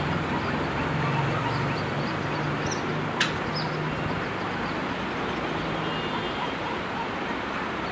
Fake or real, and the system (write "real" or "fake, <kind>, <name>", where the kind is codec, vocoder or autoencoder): real